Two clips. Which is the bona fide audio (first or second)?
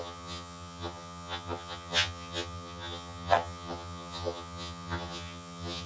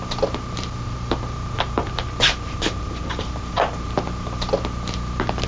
second